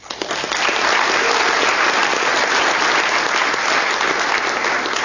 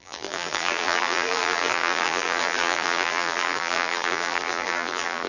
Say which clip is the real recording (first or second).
first